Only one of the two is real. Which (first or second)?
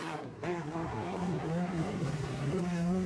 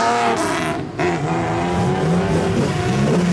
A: second